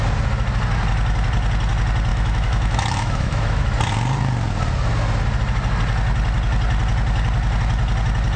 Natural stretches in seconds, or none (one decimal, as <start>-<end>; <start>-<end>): 0.0-2.1; 3.6-8.4